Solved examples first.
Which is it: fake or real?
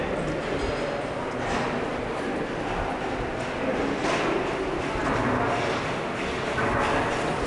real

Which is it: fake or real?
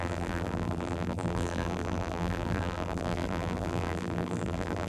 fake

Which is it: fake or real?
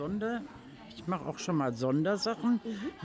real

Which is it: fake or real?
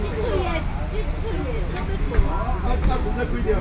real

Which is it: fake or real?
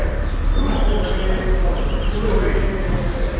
real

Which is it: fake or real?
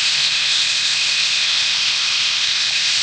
fake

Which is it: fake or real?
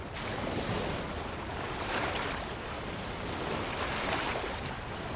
real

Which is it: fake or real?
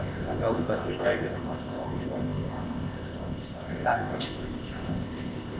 fake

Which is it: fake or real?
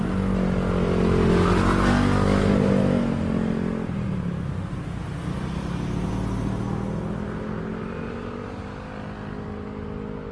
real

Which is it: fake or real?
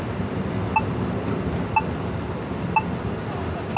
real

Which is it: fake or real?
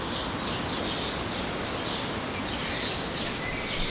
real